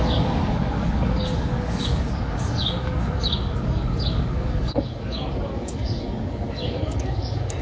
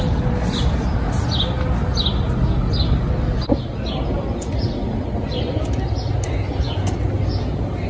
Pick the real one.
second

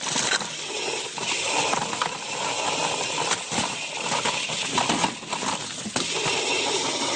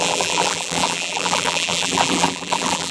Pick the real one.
first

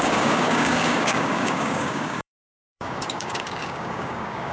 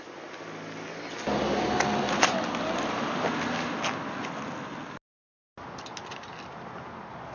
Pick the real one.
second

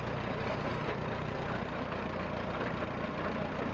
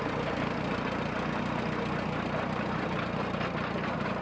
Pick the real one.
second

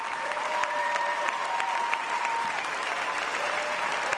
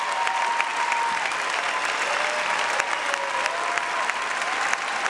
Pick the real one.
second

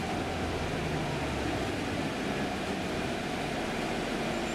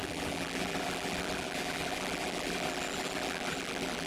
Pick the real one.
first